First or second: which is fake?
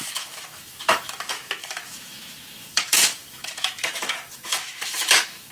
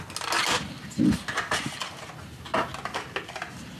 first